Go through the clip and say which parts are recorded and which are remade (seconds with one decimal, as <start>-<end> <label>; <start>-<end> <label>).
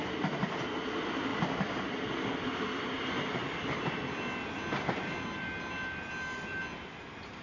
0.0-7.4 recorded